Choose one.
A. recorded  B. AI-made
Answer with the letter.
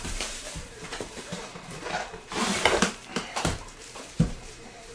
B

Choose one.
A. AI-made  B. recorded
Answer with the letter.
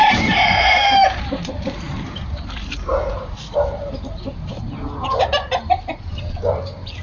A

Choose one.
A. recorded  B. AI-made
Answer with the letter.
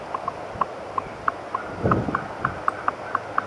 A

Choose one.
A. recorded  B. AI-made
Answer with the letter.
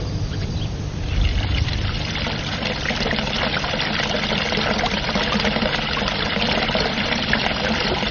B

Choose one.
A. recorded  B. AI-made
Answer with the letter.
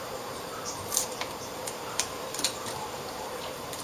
B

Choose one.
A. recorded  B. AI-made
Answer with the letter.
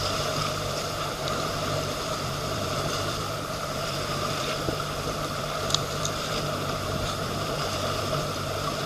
B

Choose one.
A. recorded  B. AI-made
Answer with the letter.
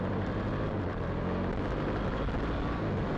A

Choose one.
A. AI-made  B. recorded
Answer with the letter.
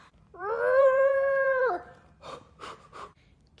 A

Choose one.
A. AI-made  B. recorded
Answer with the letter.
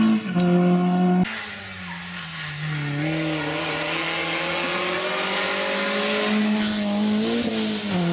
B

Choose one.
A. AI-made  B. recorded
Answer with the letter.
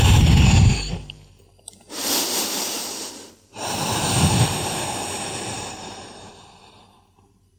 A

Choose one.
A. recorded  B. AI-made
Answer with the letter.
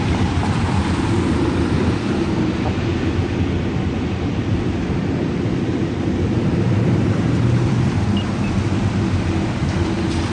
B